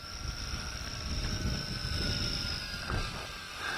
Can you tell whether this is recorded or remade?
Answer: recorded